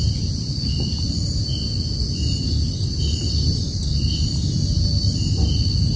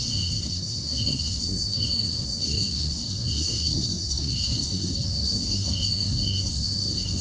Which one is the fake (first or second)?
second